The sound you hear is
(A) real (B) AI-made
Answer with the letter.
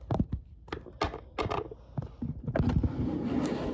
A